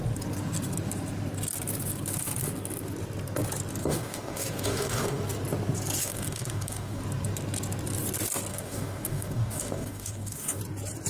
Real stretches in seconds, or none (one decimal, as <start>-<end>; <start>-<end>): 0.0-3.8; 5.2-6.0; 7.0-8.5; 10.6-11.1